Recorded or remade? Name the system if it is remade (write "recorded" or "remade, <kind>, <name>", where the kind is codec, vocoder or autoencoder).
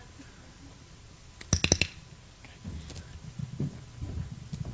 recorded